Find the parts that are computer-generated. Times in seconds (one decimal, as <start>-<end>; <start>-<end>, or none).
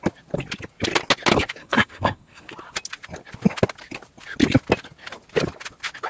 1.6-2.5